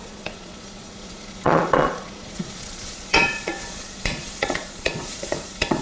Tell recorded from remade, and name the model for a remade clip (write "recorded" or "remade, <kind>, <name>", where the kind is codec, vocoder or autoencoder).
remade, vocoder, Vocos